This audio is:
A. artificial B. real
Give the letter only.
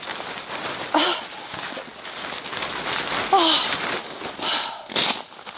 B